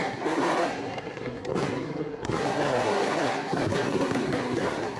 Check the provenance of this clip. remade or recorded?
remade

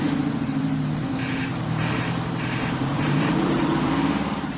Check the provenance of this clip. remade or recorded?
remade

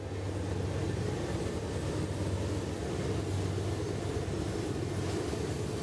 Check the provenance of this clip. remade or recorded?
recorded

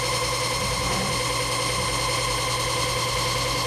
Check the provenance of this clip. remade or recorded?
recorded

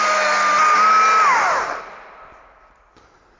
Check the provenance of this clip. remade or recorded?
recorded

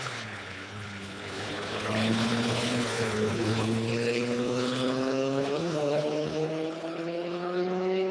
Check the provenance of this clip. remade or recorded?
remade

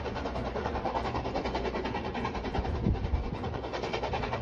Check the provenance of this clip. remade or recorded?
remade